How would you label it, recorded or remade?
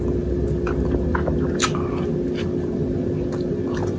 recorded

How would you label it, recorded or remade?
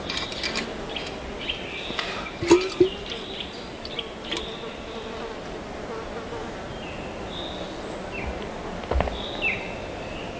recorded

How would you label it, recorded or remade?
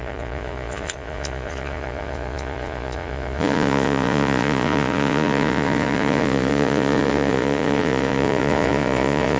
remade